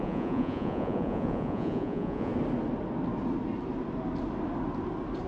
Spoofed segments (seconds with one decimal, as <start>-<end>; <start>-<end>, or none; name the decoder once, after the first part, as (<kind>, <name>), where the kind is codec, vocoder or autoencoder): 0.0-2.3 (vocoder, Vocos)

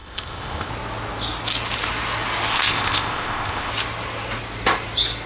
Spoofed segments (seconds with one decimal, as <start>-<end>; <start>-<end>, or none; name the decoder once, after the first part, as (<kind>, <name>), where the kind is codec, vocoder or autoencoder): 0.0-0.7 (codec, ZipCodec); 2.5-3.7